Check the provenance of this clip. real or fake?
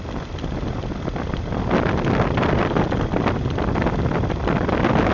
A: real